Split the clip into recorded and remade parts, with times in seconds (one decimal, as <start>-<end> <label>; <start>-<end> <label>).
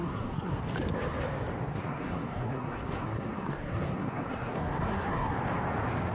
0.0-0.6 remade; 0.6-1.7 recorded; 1.7-5.4 remade; 5.4-6.1 recorded